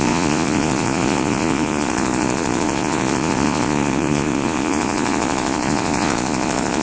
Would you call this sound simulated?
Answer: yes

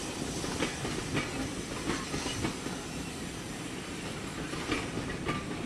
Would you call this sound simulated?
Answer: no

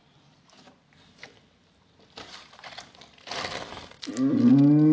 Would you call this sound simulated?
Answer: no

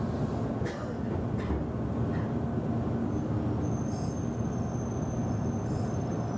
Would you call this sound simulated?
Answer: no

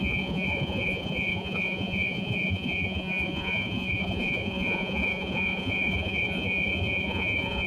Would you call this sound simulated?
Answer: yes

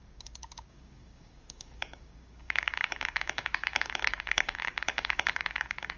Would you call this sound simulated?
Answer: yes